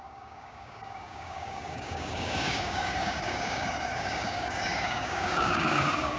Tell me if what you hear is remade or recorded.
remade